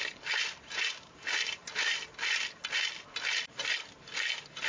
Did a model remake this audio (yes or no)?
no